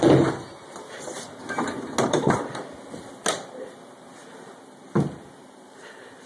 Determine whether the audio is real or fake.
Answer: real